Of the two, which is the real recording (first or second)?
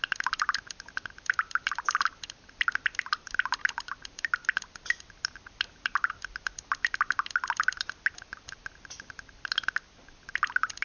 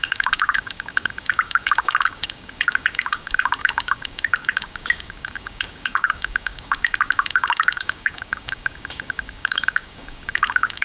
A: first